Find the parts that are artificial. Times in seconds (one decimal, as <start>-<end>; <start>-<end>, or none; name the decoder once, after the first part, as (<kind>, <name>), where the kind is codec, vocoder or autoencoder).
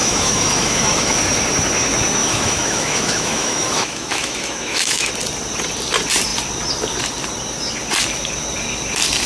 0.0-1.2 (autoencoder, DAC-VAE); 2.2-5.1